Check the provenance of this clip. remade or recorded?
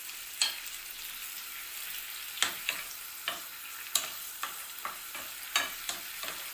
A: recorded